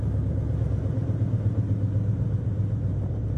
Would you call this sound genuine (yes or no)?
no